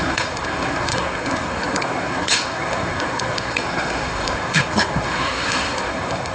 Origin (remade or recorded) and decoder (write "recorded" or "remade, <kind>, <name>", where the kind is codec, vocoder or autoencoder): remade, codec, SNAC